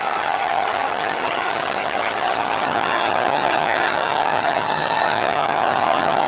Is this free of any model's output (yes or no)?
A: no